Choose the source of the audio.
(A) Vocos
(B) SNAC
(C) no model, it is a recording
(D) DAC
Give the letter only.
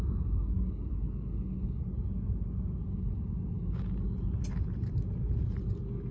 C